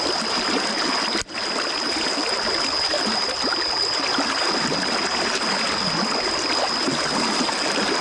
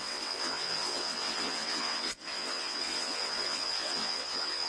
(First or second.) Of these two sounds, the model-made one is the second